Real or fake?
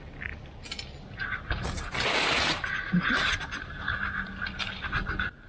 real